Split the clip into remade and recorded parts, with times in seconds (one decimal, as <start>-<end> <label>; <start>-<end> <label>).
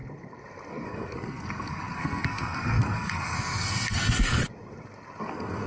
0.0-0.7 recorded; 0.7-4.4 remade; 4.4-5.2 recorded; 5.2-5.7 remade